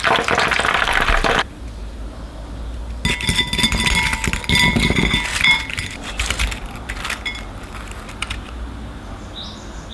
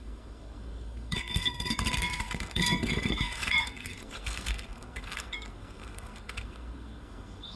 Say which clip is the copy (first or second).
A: second